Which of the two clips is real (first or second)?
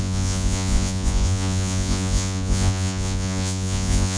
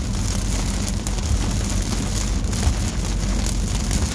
second